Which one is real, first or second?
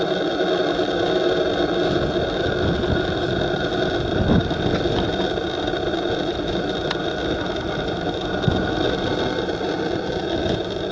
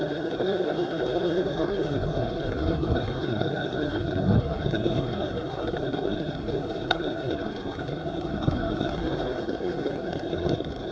first